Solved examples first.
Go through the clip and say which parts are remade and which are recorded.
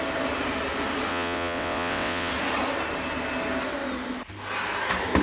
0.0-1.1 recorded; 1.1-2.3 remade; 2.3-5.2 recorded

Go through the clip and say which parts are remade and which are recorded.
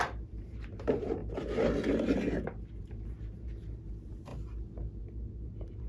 0.0-1.2 remade; 1.2-2.8 recorded; 2.8-4.3 remade; 4.3-5.0 recorded; 5.0-5.9 remade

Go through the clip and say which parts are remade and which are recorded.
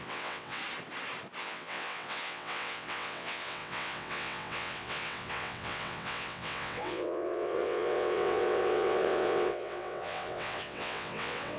0.0-0.6 remade; 0.6-1.4 recorded; 1.4-11.6 remade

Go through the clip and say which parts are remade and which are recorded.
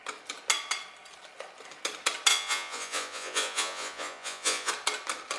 0.0-2.3 recorded; 2.3-4.7 remade; 4.7-5.4 recorded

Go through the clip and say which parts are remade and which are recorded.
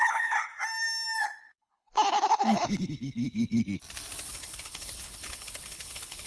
0.0-0.5 remade; 0.5-1.2 recorded; 1.2-3.6 remade; 3.6-4.3 recorded; 4.3-6.3 remade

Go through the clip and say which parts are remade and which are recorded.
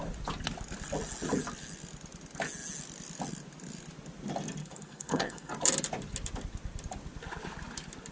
0.0-4.6 recorded; 4.6-5.5 remade; 5.5-8.1 recorded